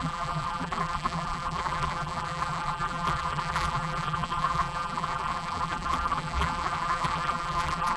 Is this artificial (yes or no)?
yes